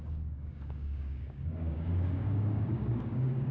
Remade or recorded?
remade